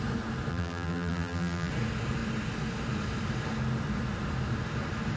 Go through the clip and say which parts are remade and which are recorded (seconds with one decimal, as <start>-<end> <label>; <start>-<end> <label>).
0.0-0.5 recorded; 0.5-1.7 remade; 1.7-5.2 recorded